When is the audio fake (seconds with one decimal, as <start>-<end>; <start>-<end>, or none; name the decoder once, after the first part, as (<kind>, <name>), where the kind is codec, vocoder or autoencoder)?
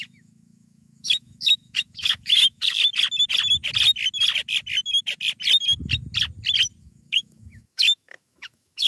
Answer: 0.0-2.9 (autoencoder, DAC-VAE); 6.8-8.9